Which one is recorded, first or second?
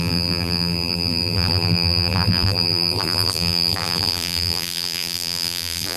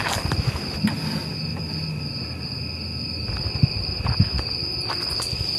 second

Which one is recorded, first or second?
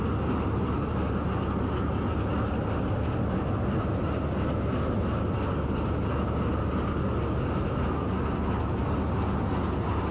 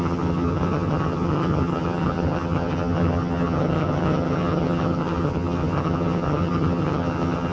first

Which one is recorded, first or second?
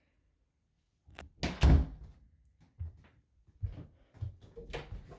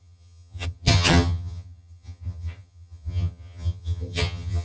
first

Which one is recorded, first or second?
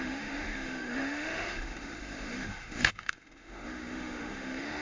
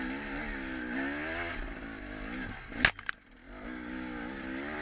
second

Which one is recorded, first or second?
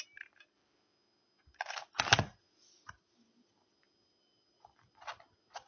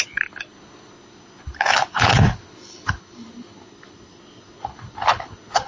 first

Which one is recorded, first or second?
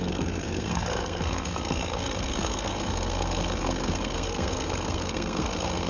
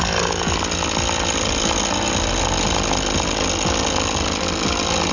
second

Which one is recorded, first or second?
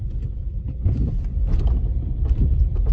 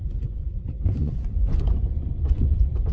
first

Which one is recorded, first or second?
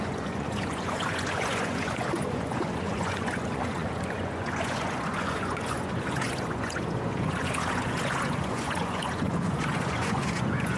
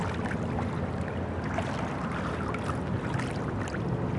second